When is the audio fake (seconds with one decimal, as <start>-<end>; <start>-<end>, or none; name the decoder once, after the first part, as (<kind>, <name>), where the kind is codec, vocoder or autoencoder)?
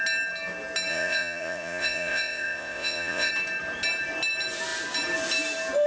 0.9-3.3 (vocoder, Vocos)